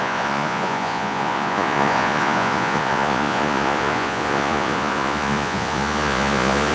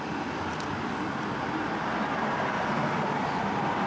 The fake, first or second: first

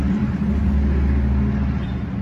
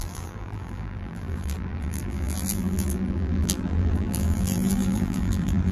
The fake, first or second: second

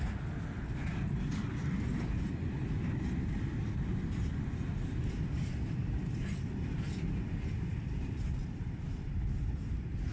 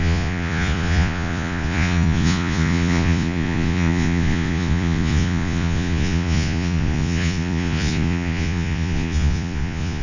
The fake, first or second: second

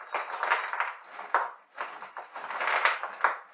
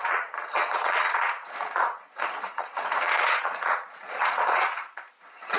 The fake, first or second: second